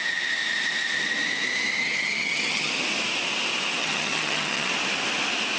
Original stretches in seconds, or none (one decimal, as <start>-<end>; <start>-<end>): 0.0-1.8; 2.7-3.8; 4.7-5.6